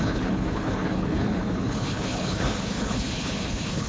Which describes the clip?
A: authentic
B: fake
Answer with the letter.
B